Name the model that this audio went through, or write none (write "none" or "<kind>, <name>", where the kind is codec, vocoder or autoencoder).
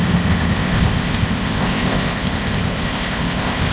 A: codec, ZipCodec